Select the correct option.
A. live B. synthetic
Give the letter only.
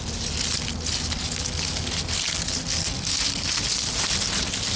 A